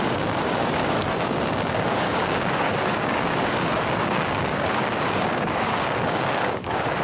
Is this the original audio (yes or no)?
no